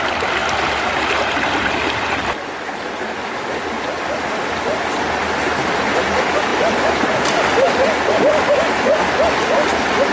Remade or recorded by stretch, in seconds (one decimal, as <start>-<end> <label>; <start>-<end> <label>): 0.0-10.1 recorded